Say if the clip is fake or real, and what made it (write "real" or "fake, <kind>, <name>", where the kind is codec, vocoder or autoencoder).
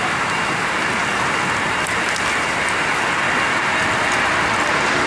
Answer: real